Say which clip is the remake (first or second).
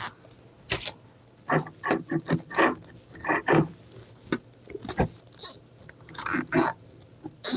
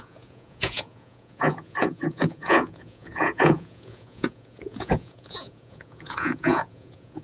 second